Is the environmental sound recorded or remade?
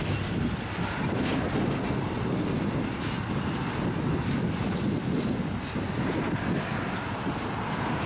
recorded